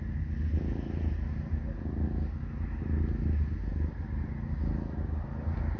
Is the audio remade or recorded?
recorded